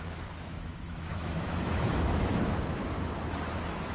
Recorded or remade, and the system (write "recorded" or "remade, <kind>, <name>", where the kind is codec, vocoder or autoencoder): remade, autoencoder, DAC-VAE